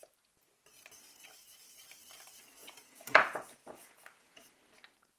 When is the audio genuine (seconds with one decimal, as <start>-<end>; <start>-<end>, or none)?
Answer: 0.0-2.6; 4.6-5.2

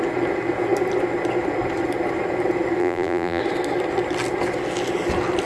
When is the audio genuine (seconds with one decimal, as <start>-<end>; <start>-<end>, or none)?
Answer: 0.0-2.8; 3.4-5.5

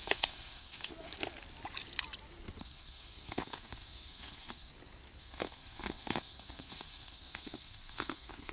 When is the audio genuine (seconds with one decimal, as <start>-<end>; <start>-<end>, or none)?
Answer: 0.9-2.6; 4.7-5.2

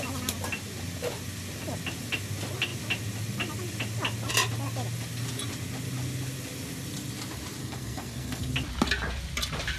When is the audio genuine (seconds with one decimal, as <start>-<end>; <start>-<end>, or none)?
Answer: 0.0-7.6; 8.5-9.8

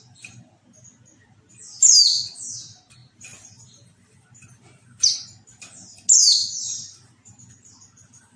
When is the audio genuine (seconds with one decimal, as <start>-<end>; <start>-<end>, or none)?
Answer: 0.0-8.4

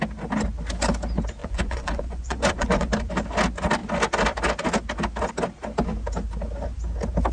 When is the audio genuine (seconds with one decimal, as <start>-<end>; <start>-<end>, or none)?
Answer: 0.0-1.4; 2.9-7.3

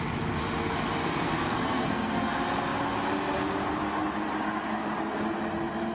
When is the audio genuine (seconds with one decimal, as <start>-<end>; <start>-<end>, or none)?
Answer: 0.0-1.0; 2.3-5.9